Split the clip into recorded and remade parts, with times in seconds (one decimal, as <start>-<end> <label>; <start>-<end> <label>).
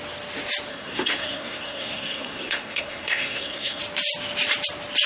0.0-0.7 recorded; 0.7-3.8 remade; 3.8-5.1 recorded